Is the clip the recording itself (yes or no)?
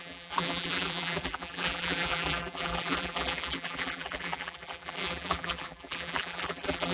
no